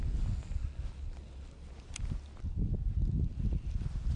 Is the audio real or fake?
real